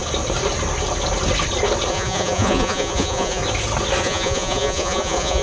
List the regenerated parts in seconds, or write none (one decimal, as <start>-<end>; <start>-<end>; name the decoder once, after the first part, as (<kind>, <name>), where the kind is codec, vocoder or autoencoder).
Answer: 1.9-3.4 (vocoder, Vocos); 4.0-5.4